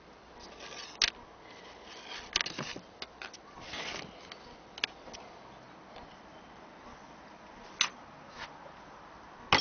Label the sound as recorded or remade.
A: recorded